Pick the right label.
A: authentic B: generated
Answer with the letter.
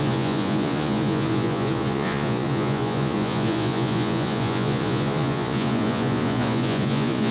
B